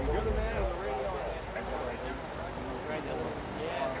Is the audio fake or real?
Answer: real